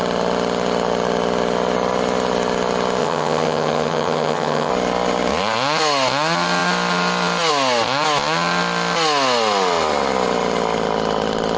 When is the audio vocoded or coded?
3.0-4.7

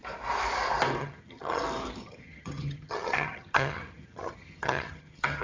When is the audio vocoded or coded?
1.0-1.6; 2.0-5.4

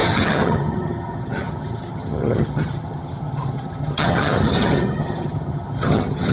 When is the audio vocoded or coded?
0.0-6.3

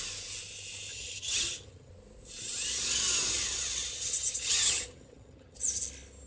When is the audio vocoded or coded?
0.9-1.9; 3.9-5.6

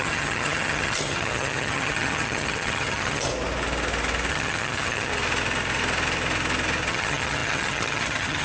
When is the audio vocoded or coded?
0.0-3.3; 4.3-5.1; 6.9-8.4

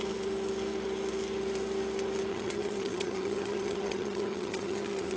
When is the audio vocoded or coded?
2.3-5.2